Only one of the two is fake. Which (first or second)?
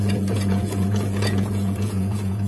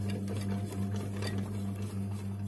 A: first